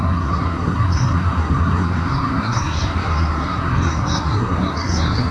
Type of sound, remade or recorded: remade